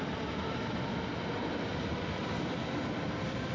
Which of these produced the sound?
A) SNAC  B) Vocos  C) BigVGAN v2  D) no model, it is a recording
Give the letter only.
D